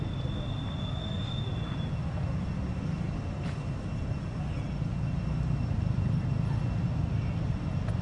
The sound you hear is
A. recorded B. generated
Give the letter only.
A